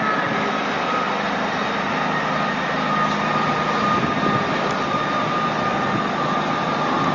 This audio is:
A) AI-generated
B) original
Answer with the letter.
B